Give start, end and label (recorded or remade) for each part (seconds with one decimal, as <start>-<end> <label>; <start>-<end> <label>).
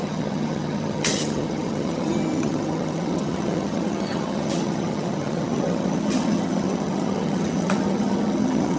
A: 0.0-8.8 remade